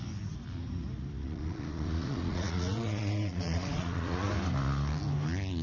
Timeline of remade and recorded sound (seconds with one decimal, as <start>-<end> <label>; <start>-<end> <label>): 0.0-1.2 recorded; 1.2-4.3 remade; 4.3-5.6 recorded